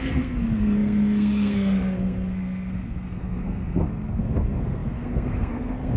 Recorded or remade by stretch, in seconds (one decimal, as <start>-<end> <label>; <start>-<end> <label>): 0.0-6.0 remade